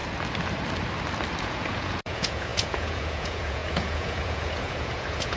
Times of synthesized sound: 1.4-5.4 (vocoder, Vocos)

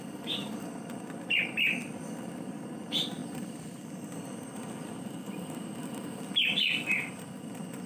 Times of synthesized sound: none

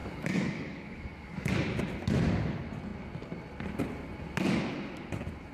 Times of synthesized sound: 0.0-1.5 (codec, DAC)

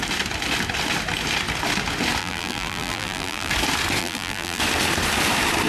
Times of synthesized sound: 2.2-3.5 (vocoder, BigVGAN v2); 4.0-4.6

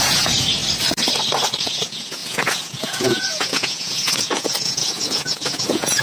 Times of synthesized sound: 0.0-0.6 (vocoder, Vocos); 1.6-6.0

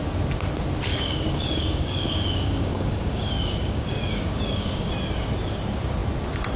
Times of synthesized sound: 0.9-4.9 (codec, DAC)

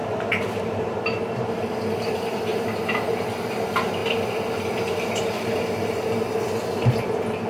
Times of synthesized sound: 0.0-1.0 (vocoder, BigVGAN v2)

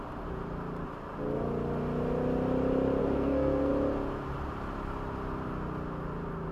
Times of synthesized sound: 3.0-3.7 (codec, SNAC)